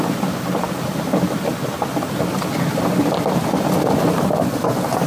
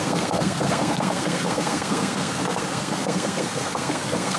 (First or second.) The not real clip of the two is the second